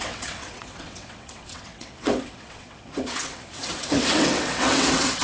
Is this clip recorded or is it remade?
remade